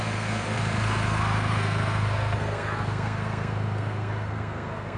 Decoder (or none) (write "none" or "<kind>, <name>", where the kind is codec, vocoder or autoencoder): codec, SNAC